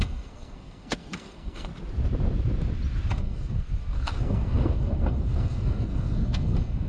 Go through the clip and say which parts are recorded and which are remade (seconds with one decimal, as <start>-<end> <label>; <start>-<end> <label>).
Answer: 0.0-1.7 remade; 1.7-3.1 recorded; 3.1-6.9 remade